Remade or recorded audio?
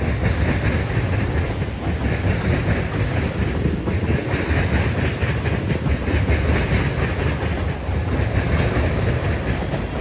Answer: recorded